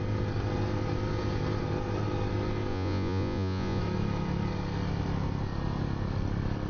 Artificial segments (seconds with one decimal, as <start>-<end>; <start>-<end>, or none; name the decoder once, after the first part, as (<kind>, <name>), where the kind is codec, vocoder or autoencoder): 2.7-3.8 (vocoder, Vocos)